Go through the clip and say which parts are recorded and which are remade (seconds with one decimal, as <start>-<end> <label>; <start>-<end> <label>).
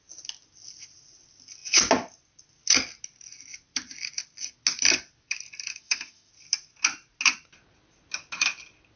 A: 0.0-5.7 recorded; 5.7-6.3 remade; 6.3-9.0 recorded